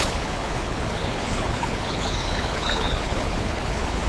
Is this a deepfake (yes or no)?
yes